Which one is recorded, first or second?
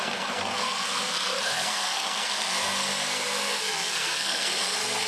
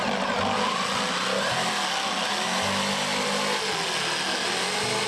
second